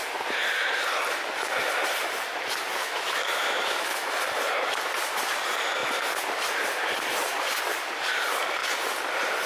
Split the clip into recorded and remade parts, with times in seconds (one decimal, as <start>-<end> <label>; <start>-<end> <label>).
0.0-2.8 recorded; 2.8-4.1 remade; 4.1-9.5 recorded